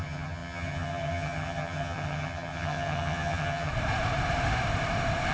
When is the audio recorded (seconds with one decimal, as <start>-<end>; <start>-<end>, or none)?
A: 3.7-5.3